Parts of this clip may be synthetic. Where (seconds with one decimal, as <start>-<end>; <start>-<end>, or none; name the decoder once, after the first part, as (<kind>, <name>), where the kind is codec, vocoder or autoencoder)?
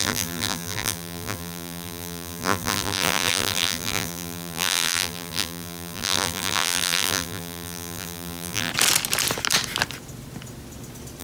0.0-8.7 (vocoder, BigVGAN v2)